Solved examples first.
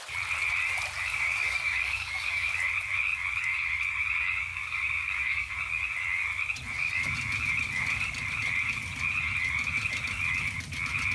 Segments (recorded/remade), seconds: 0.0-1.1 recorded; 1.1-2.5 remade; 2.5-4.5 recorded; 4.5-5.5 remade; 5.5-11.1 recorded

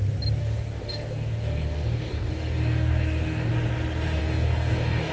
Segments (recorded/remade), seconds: 0.0-0.4 recorded; 0.4-3.5 remade; 3.5-4.2 recorded; 4.2-5.1 remade

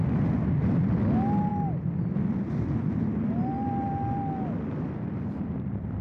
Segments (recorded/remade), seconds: 0.0-6.0 recorded

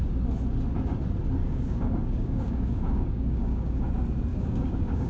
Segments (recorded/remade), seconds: 0.0-1.4 recorded; 1.4-3.8 remade; 3.8-4.3 recorded; 4.3-5.1 remade

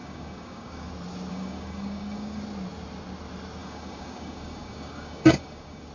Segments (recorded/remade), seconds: 0.0-0.9 remade; 0.9-1.3 recorded; 1.3-2.4 remade; 2.4-3.6 recorded; 3.6-5.9 remade